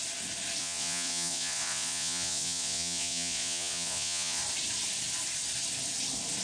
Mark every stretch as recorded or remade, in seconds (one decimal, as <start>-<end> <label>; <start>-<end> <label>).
0.0-0.6 recorded; 0.6-4.4 remade; 4.4-6.4 recorded